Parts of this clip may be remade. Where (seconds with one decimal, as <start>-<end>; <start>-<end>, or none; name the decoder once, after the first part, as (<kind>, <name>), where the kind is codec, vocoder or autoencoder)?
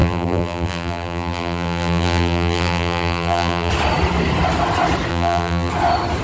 0.0-3.7 (vocoder, BigVGAN v2); 5.1-5.7